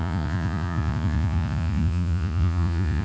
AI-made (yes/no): yes